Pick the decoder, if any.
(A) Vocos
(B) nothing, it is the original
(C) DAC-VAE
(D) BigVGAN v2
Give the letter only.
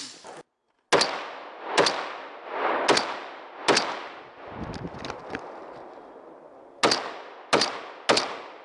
B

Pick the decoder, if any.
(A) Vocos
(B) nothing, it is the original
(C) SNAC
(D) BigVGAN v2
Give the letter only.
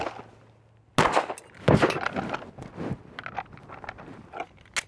B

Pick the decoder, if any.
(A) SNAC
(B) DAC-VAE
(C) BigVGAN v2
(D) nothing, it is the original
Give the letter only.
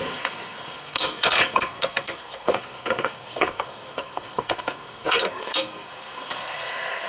A